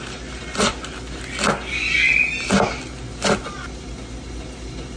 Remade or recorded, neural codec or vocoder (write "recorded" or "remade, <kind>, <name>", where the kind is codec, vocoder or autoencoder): recorded